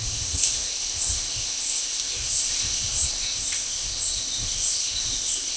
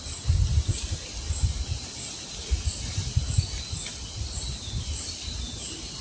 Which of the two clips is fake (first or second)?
first